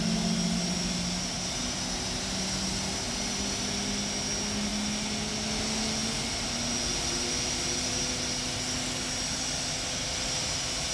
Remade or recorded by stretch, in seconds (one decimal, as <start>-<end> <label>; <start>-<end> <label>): 0.0-10.9 recorded